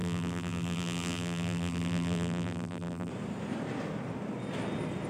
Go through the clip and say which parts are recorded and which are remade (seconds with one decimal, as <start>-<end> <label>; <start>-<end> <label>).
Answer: 0.0-3.1 remade; 3.1-5.1 recorded